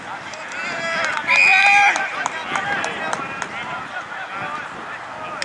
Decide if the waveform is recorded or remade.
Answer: recorded